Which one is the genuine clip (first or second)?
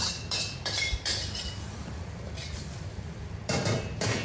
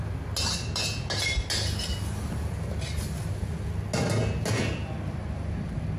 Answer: second